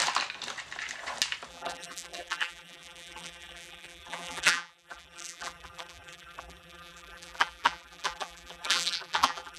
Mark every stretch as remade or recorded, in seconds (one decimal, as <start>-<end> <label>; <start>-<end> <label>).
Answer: 0.0-1.5 recorded; 1.5-9.6 remade

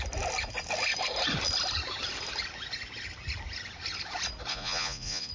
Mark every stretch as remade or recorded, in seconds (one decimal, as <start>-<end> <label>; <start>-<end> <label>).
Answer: 0.0-4.5 recorded; 4.5-5.3 remade

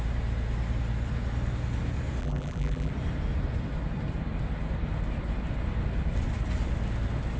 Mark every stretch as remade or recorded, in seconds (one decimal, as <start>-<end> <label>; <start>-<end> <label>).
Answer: 0.0-2.2 recorded; 2.2-2.9 remade; 2.9-7.4 recorded